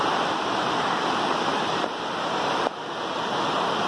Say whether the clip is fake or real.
fake